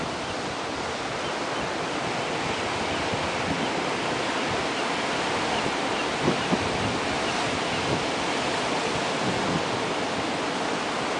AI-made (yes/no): no